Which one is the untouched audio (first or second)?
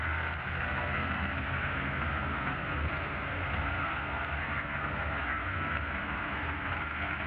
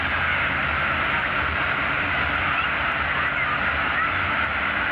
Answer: second